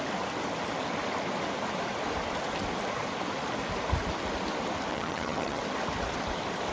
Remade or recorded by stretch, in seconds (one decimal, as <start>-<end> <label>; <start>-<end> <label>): 0.0-4.9 recorded; 4.9-5.6 remade; 5.6-6.7 recorded